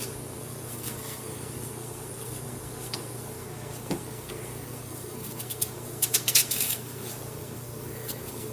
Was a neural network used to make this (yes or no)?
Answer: yes